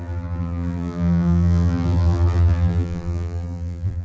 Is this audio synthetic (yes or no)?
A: yes